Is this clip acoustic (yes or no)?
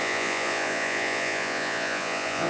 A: no